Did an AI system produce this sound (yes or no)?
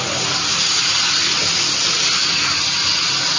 no